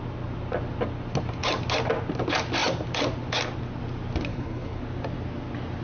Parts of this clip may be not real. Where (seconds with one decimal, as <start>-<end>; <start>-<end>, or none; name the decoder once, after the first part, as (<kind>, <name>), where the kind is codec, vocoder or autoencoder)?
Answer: 4.3-4.8 (codec, HILCodec)